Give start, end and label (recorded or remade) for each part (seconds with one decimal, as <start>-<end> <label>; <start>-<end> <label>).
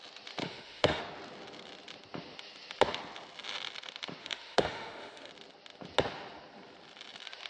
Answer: 0.0-0.4 recorded; 0.4-1.0 remade; 1.0-4.2 recorded; 4.2-5.3 remade; 5.3-7.5 recorded